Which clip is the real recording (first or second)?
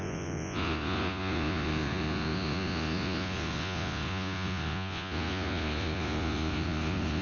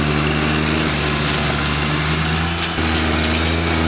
second